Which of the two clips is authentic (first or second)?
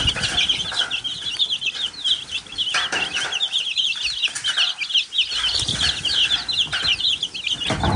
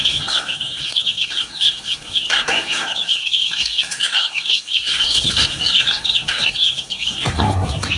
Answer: first